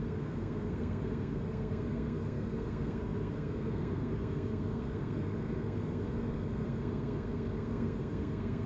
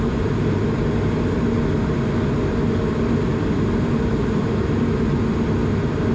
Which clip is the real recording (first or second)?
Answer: second